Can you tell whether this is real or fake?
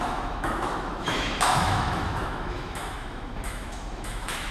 fake